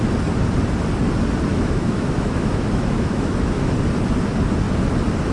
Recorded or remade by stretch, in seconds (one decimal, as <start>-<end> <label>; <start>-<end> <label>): 0.0-1.5 recorded; 1.5-3.7 remade; 3.7-5.3 recorded